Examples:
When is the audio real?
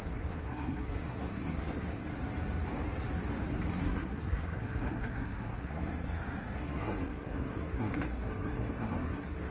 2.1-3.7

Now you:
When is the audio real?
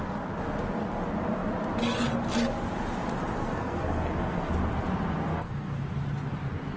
0.0-3.4; 4.5-5.3; 5.8-6.8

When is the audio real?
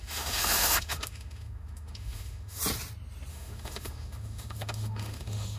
2.6-3.3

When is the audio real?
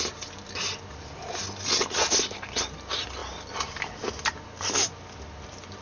0.0-5.8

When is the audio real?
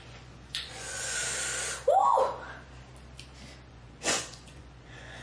1.2-3.7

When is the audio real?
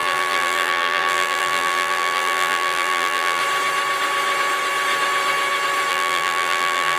3.4-5.9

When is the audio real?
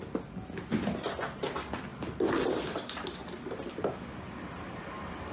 0.0-5.3